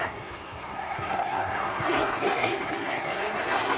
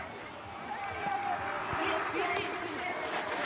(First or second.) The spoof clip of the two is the first